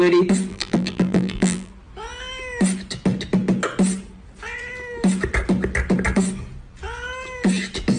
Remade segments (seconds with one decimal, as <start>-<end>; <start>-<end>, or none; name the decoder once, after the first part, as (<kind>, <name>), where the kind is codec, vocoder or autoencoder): 0.5-1.7 (vocoder, BigVGAN v2)